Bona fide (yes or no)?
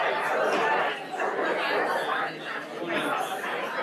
yes